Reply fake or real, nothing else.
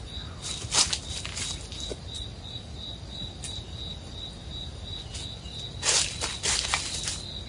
real